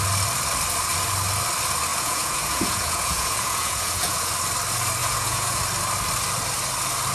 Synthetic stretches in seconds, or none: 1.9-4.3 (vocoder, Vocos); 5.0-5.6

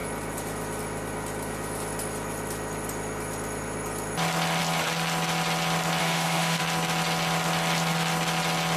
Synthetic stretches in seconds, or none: 6.0-6.6 (autoencoder, DAC-VAE)

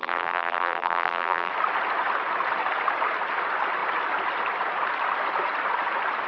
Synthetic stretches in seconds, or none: 0.0-1.5 (vocoder, BigVGAN v2)